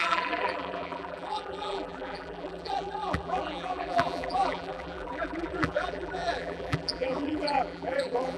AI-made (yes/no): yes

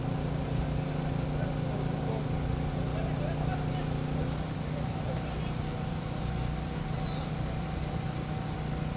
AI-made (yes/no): no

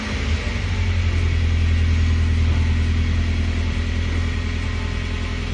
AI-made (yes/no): no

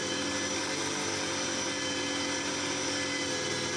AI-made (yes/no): no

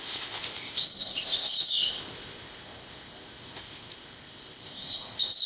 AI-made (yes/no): yes